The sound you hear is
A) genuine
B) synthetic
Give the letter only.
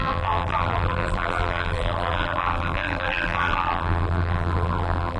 B